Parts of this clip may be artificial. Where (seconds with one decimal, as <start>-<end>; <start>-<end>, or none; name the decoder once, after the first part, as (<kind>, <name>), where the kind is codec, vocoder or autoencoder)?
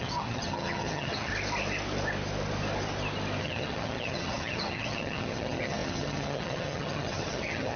0.0-1.3 (vocoder, HiFi-GAN); 3.4-7.8